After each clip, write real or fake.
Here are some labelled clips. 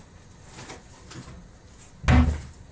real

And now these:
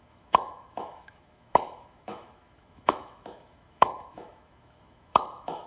fake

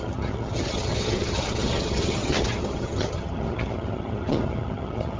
fake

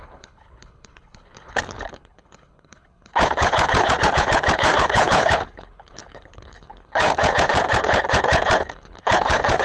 fake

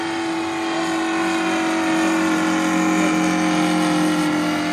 real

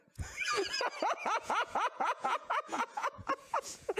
fake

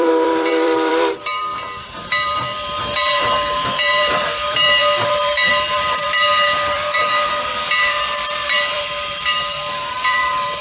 fake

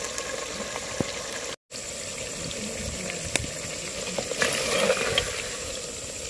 real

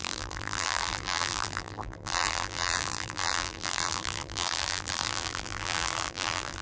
fake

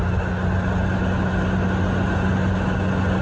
real